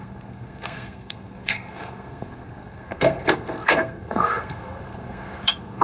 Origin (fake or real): fake